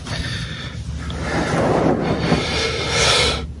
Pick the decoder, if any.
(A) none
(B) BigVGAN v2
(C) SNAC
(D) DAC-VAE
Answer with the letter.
A